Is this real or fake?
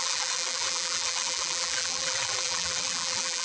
fake